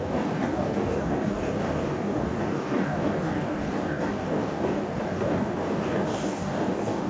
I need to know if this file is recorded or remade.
remade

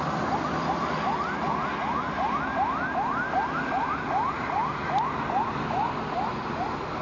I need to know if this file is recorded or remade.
recorded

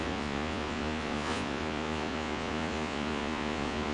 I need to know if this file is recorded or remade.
remade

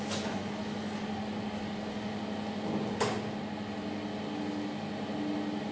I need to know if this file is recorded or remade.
recorded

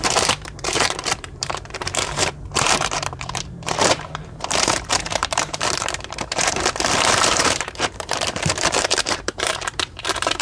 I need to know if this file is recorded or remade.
remade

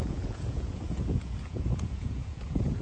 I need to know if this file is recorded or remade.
remade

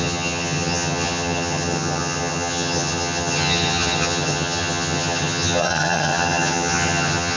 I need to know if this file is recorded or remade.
remade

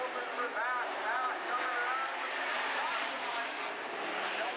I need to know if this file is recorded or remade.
remade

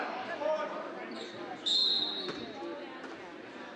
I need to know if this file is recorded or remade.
recorded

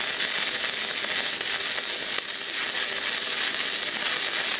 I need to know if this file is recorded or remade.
recorded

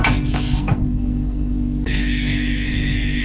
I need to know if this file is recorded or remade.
remade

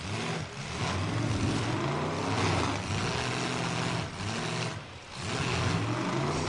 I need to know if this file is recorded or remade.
recorded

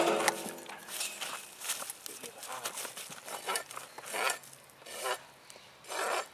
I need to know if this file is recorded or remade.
recorded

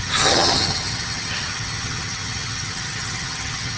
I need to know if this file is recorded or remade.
remade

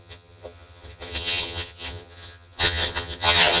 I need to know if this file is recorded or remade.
remade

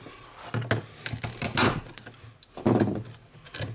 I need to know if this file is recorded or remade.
recorded